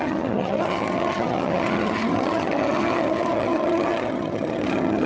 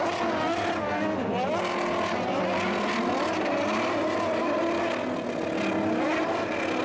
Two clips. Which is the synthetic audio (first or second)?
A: first